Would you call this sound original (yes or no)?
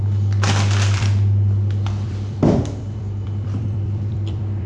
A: no